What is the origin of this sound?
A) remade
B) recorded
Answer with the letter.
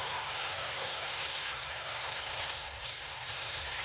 A